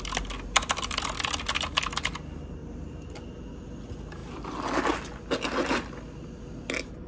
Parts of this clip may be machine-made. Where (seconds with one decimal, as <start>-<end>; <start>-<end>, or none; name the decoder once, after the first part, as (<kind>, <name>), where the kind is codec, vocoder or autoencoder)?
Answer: 2.6-3.3 (vocoder, BigVGAN v2)